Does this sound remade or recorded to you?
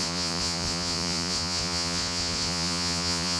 remade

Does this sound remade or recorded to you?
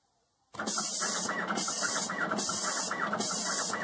recorded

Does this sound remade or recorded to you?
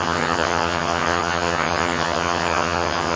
remade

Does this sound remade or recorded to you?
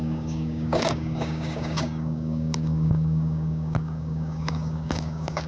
remade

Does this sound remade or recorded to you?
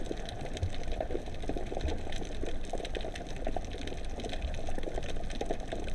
recorded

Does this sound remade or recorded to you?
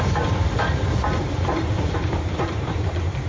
remade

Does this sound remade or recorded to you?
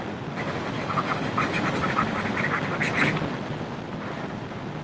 recorded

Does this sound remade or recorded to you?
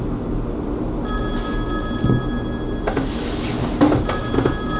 recorded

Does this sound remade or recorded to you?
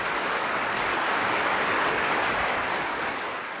remade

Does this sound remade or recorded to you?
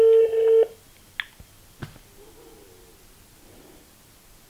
recorded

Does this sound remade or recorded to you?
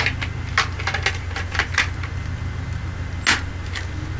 recorded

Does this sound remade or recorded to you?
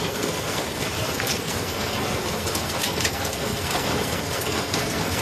remade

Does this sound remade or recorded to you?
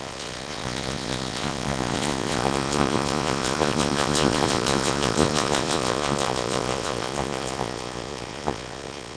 remade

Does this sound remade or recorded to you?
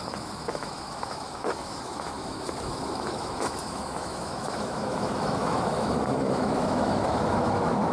remade